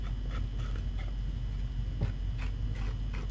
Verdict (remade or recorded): recorded